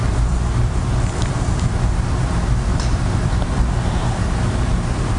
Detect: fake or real fake